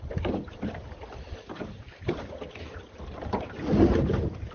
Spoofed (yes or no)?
no